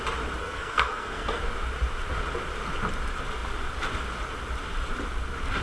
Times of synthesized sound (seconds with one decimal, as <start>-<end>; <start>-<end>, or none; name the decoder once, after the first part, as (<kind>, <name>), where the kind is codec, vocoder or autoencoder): 0.4-1.4 (codec, SNAC)